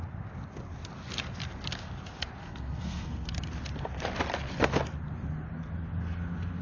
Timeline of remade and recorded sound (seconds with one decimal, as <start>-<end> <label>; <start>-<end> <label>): 0.0-2.4 recorded; 2.4-3.3 remade; 3.3-6.6 recorded